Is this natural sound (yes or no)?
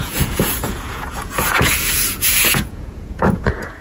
no